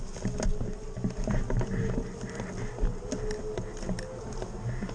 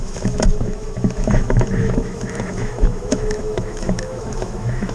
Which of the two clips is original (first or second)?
first